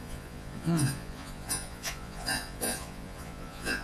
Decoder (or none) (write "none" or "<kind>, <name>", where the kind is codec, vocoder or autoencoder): vocoder, Vocos